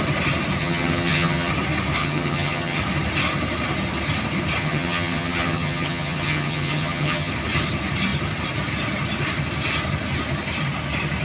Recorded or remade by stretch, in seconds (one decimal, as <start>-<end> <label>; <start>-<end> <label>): 0.0-0.6 recorded; 0.6-1.5 remade; 1.5-2.0 recorded; 2.0-2.8 remade; 2.8-4.6 recorded; 4.6-7.3 remade; 7.3-11.2 recorded